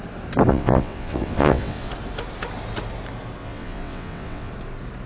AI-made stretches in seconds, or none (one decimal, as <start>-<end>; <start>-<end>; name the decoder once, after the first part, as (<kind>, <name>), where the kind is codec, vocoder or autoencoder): 0.5-1.9 (vocoder, WaveNeXt); 3.4-4.5